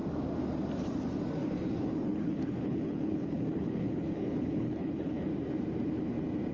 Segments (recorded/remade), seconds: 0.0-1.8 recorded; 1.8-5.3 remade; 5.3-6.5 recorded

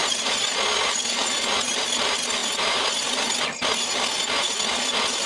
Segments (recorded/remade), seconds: 0.0-5.3 recorded